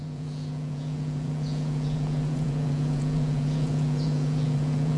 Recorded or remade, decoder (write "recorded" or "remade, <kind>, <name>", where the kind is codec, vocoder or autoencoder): remade, vocoder, Vocos